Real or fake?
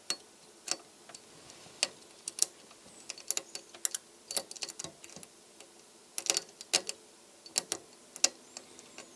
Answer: real